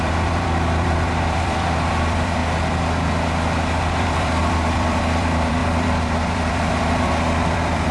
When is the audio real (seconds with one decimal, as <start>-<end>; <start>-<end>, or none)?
2.4-4.0